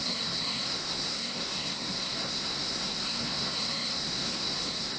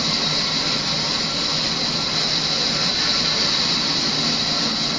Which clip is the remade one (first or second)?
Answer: first